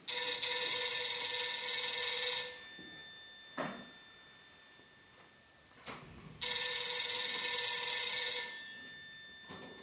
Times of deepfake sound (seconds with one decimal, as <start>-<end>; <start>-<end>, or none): none

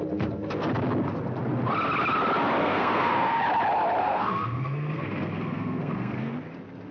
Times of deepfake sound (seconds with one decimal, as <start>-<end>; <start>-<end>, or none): 2.6-3.4; 4.0-6.3

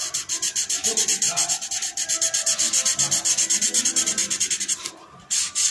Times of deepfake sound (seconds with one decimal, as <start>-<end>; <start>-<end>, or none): none

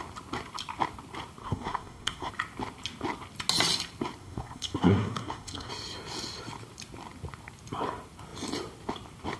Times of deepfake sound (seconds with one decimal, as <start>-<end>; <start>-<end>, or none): 1.4-2.3; 4.2-5.7

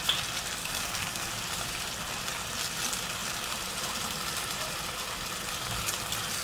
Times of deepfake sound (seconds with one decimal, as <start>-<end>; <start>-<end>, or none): 0.6-1.3

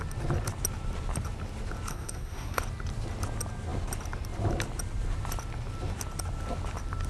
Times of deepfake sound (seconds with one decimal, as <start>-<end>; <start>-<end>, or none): 1.9-2.6